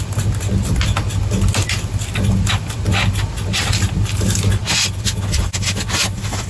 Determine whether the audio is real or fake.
real